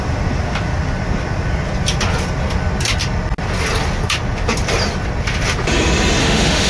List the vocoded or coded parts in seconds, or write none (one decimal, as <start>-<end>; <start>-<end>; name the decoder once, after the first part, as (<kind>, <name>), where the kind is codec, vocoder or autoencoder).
6.2-6.7 (autoencoder, DAC-VAE)